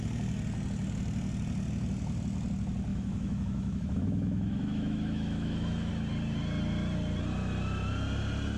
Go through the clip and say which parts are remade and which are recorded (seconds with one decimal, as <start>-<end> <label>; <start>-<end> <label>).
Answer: 0.0-2.9 recorded; 2.9-5.9 remade; 5.9-8.6 recorded